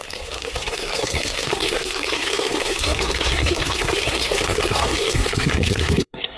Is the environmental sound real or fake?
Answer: fake